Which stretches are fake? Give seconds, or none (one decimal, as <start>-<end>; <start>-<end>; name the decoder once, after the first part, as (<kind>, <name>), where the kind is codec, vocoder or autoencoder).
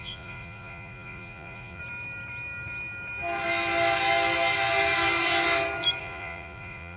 0.0-1.8 (vocoder, Vocos); 6.0-7.0